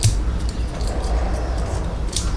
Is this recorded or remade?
recorded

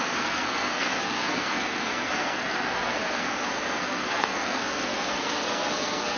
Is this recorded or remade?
remade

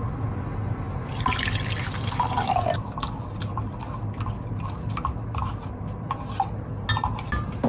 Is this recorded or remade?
recorded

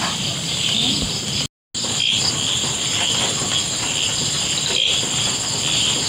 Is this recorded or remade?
recorded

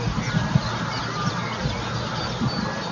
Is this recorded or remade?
recorded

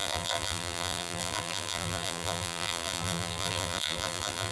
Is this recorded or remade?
remade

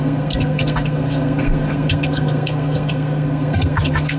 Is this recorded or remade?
remade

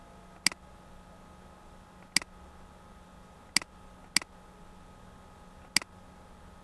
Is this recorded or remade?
recorded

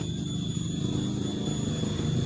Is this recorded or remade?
recorded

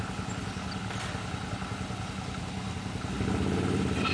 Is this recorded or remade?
recorded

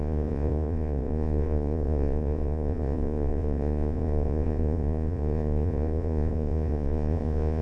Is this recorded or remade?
remade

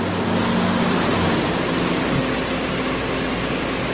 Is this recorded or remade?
recorded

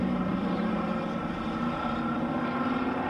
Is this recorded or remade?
remade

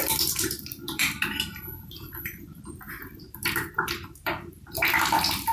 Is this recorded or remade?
remade